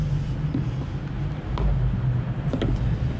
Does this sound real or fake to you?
real